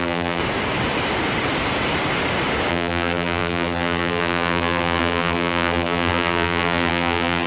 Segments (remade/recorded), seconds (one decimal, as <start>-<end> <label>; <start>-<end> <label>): 0.0-0.4 remade; 0.4-2.7 recorded; 2.7-7.5 remade